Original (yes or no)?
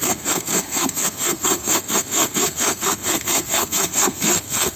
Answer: no